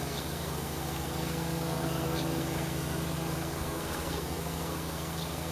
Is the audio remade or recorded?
remade